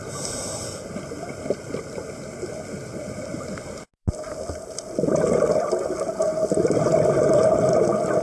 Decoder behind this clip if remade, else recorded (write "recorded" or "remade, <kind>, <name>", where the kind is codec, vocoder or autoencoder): recorded